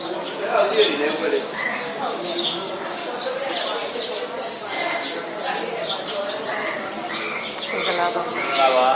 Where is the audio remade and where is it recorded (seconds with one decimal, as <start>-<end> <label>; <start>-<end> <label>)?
0.0-1.2 recorded; 1.2-3.1 remade; 3.1-8.2 recorded; 8.2-9.0 remade